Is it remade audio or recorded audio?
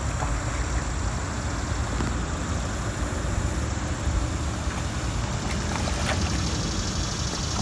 recorded